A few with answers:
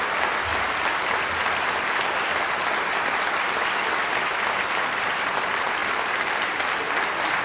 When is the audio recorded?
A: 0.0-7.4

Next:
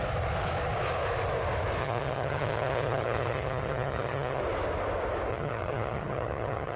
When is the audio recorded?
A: 0.0-1.8; 4.4-5.3